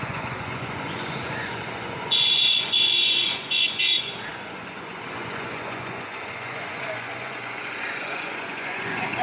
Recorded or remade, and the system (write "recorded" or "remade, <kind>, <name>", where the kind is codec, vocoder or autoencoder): remade, vocoder, Vocos